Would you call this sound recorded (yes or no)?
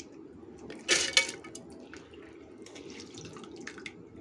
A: yes